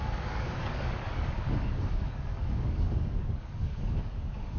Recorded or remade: remade